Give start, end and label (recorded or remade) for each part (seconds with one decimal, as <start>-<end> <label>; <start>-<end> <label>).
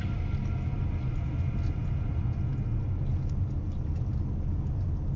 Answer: 0.0-5.2 recorded